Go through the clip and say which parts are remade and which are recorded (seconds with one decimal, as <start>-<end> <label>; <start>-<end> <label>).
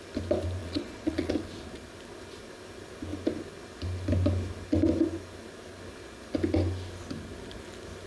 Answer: 0.0-0.6 recorded; 0.6-1.3 remade; 1.3-8.1 recorded